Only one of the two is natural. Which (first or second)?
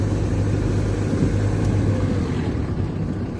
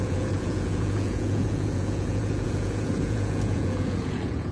first